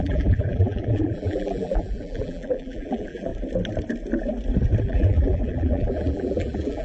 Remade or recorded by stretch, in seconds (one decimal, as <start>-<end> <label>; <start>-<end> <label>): 0.0-3.3 remade; 3.3-4.8 recorded; 4.8-6.8 remade